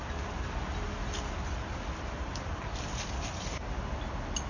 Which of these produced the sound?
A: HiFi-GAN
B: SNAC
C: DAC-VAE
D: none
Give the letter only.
D